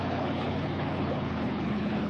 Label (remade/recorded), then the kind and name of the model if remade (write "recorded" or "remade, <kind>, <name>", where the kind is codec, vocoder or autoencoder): remade, codec, HILCodec